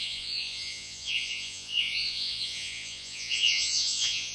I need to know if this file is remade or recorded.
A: remade